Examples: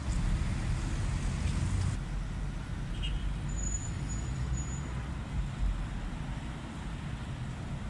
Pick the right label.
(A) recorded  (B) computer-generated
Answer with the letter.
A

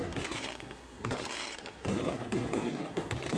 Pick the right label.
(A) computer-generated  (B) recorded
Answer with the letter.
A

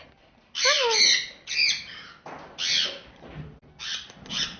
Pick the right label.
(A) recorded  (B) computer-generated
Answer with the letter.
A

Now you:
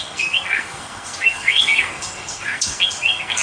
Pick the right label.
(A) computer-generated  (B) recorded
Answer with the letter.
A